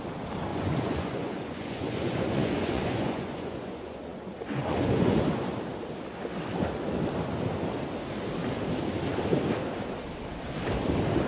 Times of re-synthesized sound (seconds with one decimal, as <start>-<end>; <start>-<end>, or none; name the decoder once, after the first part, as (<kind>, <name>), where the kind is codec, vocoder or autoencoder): 0.5-5.2 (vocoder, Vocos)